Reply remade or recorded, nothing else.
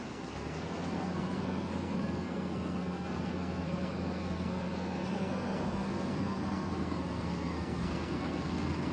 remade